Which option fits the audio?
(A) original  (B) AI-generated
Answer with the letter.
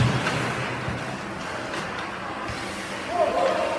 A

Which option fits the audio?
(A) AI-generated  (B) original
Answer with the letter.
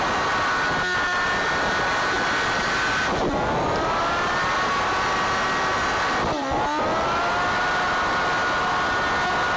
B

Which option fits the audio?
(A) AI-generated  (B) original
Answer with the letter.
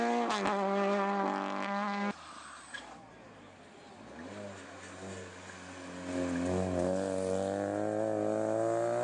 B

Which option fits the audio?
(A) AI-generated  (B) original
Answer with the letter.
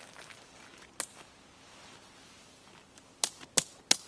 B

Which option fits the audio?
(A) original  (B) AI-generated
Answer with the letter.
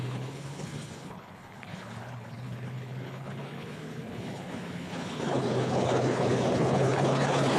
B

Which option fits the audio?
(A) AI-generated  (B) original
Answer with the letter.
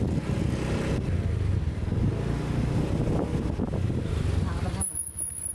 B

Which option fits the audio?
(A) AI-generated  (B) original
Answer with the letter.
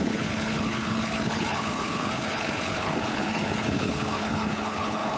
A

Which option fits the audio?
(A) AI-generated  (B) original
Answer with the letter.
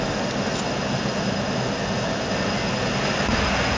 B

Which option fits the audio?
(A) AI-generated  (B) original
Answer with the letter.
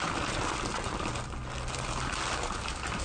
B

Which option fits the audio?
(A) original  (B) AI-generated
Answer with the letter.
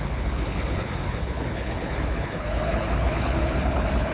B